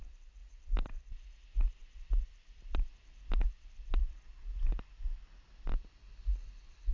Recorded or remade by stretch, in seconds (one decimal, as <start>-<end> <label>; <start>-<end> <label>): 0.0-0.4 recorded; 0.4-1.0 remade; 1.0-6.9 recorded